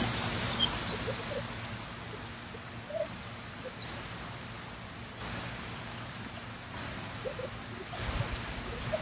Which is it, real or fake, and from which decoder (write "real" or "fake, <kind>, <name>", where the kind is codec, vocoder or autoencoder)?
real